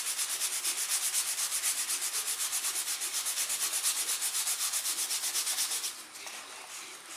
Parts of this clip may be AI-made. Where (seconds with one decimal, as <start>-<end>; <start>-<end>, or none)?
none

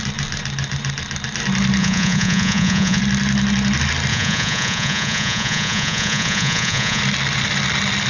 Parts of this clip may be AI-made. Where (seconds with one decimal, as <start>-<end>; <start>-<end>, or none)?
1.8-3.0; 4.1-7.0